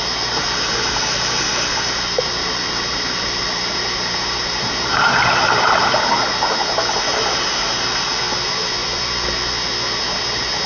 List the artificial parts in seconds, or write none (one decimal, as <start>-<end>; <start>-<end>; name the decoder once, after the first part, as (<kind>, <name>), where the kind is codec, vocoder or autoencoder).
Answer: 1.5-5.8 (vocoder, BigVGAN v2); 8.8-9.3